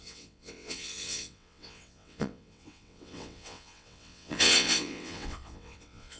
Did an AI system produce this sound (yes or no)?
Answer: yes